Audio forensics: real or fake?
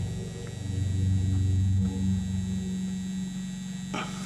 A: real